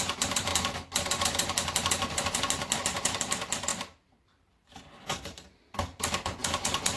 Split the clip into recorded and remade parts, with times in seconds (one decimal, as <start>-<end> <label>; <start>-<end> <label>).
0.0-0.5 remade; 0.5-2.8 recorded; 2.8-7.0 remade